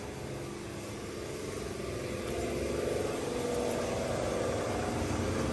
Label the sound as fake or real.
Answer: real